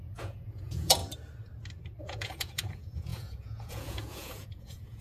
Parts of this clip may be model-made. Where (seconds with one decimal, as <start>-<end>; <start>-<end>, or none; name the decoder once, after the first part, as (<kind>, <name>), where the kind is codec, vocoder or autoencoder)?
0.0-1.0 (vocoder, Vocos); 2.0-5.0